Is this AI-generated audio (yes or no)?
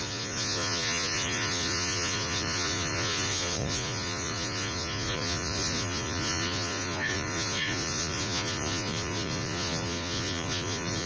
yes